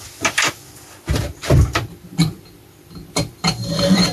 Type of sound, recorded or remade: recorded